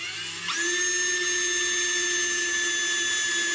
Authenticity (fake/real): real